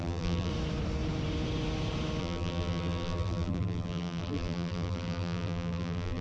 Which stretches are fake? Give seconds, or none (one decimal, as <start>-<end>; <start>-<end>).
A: 0.0-0.5; 2.2-6.2